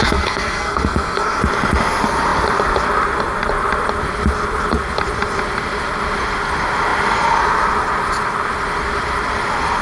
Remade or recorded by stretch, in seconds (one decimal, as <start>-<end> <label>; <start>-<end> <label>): 0.0-1.4 remade; 1.4-9.8 recorded